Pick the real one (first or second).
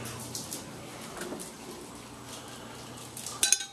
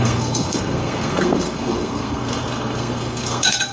first